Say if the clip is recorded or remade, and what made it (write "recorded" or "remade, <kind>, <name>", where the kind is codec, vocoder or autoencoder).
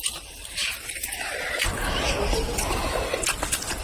recorded